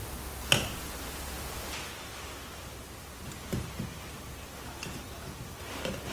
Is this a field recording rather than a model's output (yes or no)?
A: yes